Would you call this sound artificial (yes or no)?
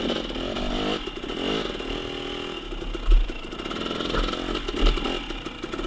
no